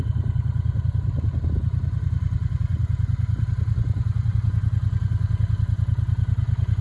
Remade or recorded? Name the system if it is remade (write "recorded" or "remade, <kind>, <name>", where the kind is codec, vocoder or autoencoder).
recorded